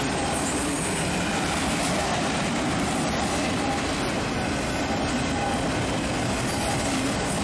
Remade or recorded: recorded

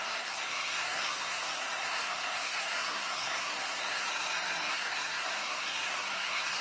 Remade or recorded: remade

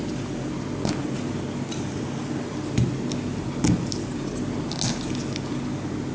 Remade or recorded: recorded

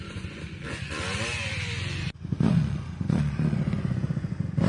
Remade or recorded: remade